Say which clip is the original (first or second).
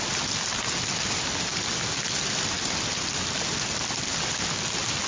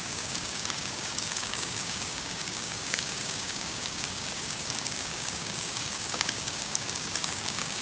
first